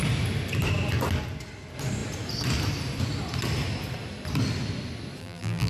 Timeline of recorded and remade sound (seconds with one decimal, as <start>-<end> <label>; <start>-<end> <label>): 0.0-5.2 recorded; 5.2-5.7 remade